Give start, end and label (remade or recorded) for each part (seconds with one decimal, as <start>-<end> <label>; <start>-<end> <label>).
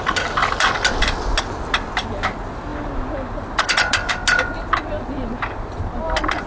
0.0-6.5 recorded